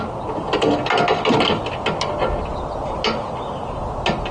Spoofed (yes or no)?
no